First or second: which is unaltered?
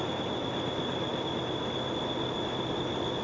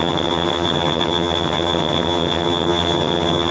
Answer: first